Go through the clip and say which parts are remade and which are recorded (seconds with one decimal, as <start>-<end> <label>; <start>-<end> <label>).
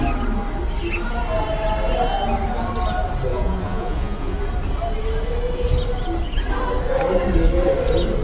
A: 0.0-3.3 recorded; 3.3-4.4 remade; 4.4-8.2 recorded